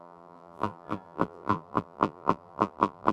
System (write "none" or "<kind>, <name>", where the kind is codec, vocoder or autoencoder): vocoder, BigVGAN v2